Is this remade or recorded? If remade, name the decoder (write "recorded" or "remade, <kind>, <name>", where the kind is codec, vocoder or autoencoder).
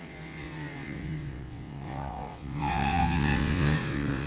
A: remade, vocoder, WaveNeXt